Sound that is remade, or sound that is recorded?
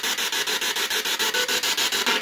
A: recorded